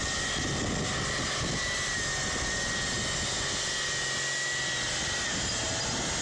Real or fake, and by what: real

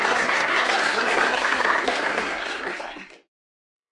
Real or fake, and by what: fake, codec, SNAC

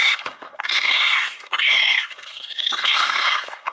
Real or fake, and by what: fake, codec, SNAC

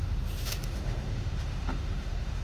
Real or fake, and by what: fake, autoencoder, DAC-VAE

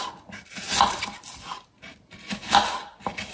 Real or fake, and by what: real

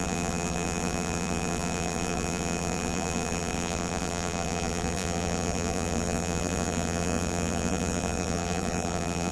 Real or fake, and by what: fake, vocoder, BigVGAN v2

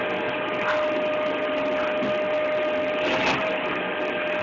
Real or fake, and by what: real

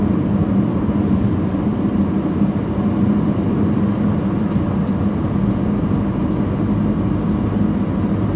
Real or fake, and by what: real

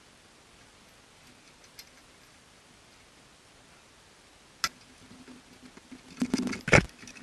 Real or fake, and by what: real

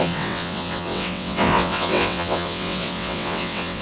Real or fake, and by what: fake, vocoder, WaveNeXt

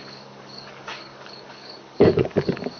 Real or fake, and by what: fake, codec, DAC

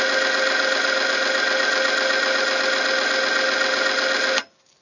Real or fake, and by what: real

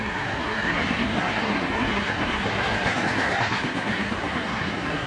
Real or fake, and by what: fake, codec, SNAC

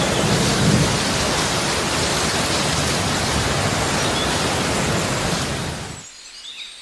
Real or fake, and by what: real